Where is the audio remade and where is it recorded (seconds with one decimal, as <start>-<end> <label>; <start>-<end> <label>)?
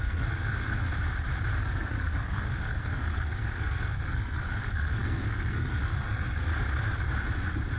0.0-0.9 remade; 0.9-1.6 recorded; 1.6-6.5 remade; 6.5-7.8 recorded